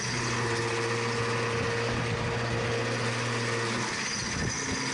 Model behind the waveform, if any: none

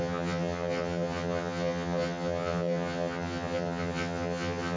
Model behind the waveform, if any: vocoder, HiFi-GAN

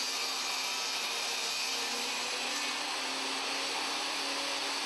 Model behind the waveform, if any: none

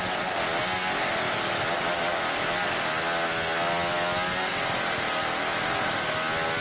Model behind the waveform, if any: none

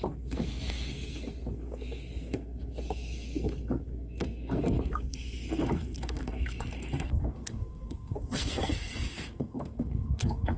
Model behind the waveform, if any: codec, SNAC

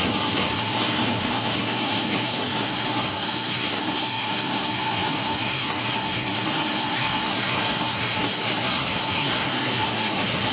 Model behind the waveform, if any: codec, SNAC